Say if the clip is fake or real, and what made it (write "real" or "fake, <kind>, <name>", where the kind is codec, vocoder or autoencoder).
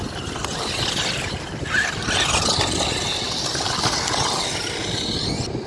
real